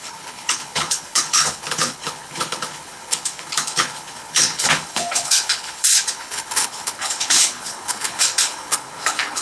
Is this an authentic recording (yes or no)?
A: no